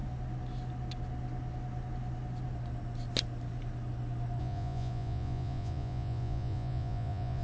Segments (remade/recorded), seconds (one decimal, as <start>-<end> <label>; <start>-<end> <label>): 0.0-4.4 recorded; 4.4-7.4 remade